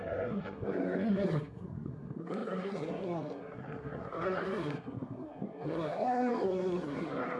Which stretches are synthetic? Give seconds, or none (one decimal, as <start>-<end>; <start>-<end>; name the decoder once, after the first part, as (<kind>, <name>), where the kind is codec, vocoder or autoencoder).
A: 0.0-7.4 (codec, SNAC)